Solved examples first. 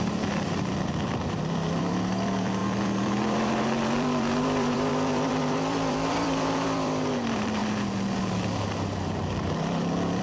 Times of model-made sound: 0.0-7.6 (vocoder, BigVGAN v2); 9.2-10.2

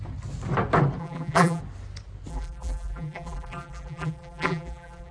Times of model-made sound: 1.0-1.6 (vocoder, BigVGAN v2); 2.3-5.1

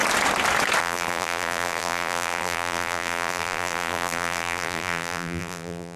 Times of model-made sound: 0.8-6.0 (vocoder, BigVGAN v2)

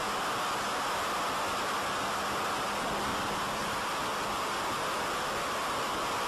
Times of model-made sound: 3.1-3.8 (vocoder, BigVGAN v2)

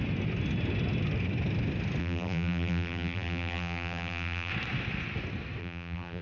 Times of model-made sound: 2.0-4.5 (vocoder, BigVGAN v2); 5.6-6.2

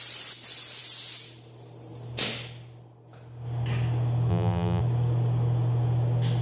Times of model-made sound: 4.3-4.8 (vocoder, BigVGAN v2)

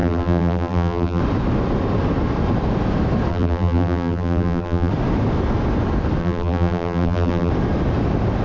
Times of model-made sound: 0.0-1.2 (vocoder, BigVGAN v2); 3.3-4.9; 6.2-7.5